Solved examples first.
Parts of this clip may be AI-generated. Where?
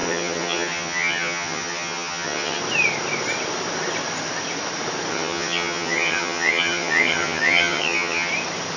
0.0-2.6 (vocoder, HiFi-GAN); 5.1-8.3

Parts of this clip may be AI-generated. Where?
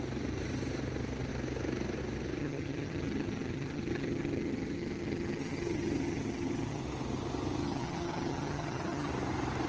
2.4-6.8 (vocoder, HiFi-GAN); 7.6-9.1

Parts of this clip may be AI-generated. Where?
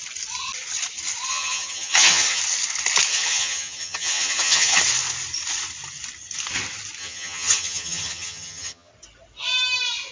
1.3-2.4 (vocoder, HiFi-GAN); 3.1-4.8; 7.0-8.9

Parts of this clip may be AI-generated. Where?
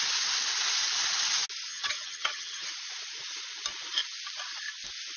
1.7-2.7 (vocoder, HiFi-GAN)